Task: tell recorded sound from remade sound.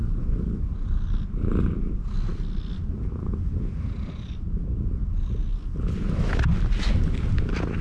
recorded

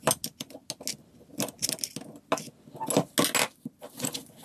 recorded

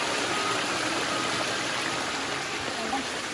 recorded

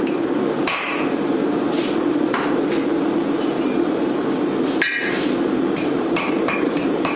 remade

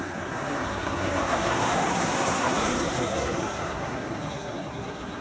remade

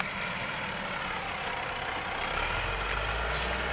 recorded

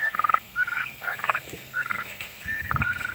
remade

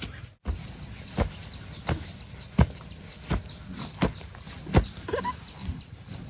recorded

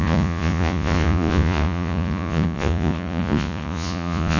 remade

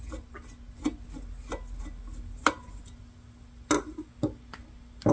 recorded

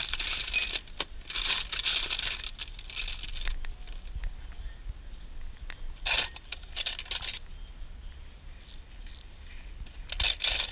recorded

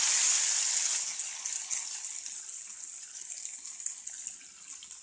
recorded